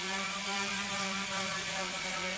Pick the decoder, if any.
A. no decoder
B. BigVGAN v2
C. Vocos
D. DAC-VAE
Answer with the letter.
C